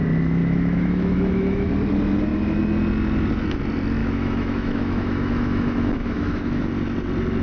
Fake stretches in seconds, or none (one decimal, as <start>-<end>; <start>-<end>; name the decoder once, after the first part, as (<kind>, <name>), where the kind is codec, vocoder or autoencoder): 0.4-1.7 (autoencoder, DAC-VAE); 4.0-6.6